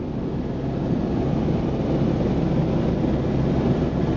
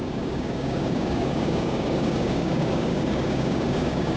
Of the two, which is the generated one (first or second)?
second